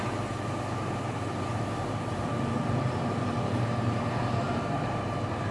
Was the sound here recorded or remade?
remade